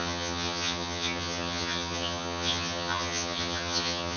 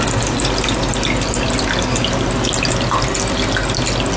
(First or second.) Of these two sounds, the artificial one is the first